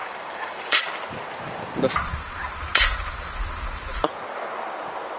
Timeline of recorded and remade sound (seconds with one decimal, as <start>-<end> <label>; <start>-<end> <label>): 0.0-0.8 remade; 0.8-5.2 recorded